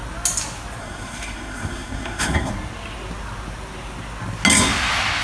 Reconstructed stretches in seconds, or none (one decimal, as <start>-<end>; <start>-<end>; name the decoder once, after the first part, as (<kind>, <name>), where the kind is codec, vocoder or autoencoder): 0.8-2.5 (codec, SNAC)